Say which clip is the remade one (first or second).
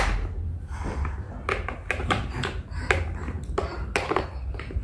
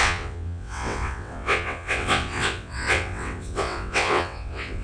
second